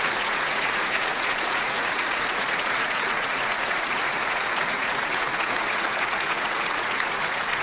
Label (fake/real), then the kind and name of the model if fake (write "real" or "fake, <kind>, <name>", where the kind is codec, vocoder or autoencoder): fake, vocoder, Vocos